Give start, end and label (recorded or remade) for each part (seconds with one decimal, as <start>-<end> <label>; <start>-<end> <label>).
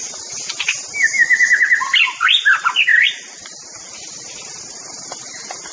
0.0-5.7 recorded